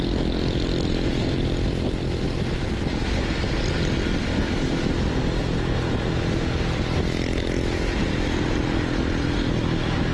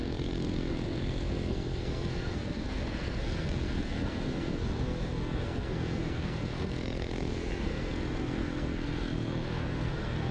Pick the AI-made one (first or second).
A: second